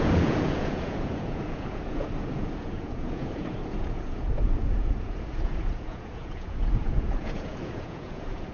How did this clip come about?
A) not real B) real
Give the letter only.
A